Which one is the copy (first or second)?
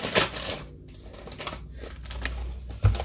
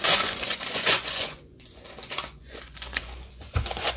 second